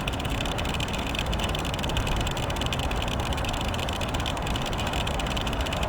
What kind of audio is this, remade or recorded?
recorded